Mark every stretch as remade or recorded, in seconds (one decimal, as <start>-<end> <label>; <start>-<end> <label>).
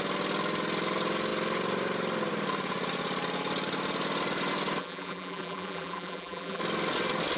0.0-4.8 recorded; 4.8-6.6 remade; 6.6-7.4 recorded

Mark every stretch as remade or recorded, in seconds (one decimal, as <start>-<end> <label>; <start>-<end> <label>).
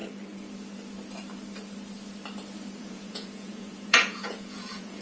0.0-2.8 recorded; 2.8-5.0 remade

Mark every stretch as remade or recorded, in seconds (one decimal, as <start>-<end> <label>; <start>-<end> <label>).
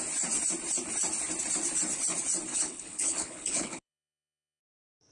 0.0-2.5 recorded; 2.5-4.6 remade; 4.6-5.1 recorded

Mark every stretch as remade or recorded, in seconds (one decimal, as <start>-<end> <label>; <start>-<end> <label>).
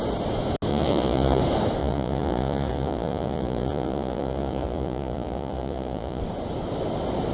0.0-0.7 recorded; 0.7-1.4 remade; 1.4-1.8 recorded; 1.8-6.2 remade; 6.2-7.3 recorded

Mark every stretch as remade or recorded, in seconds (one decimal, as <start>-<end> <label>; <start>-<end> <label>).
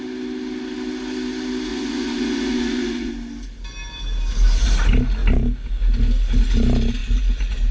0.0-1.7 recorded; 1.7-3.1 remade; 3.1-7.7 recorded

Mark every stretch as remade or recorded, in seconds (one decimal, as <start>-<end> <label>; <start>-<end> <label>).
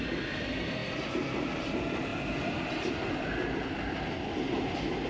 0.0-5.1 recorded